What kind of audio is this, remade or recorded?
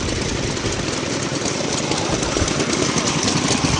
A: recorded